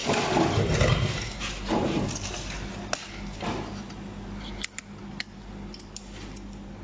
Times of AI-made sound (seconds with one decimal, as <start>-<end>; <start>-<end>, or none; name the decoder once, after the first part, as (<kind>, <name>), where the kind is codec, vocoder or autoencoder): none